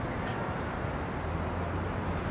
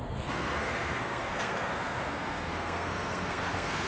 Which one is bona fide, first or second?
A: first